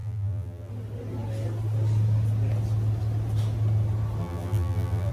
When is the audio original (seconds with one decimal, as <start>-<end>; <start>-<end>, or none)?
0.7-4.2